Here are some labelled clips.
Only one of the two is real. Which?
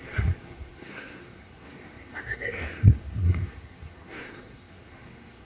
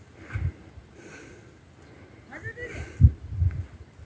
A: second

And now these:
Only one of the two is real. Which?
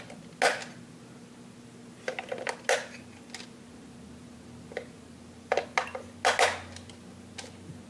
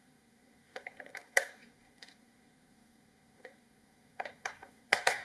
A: first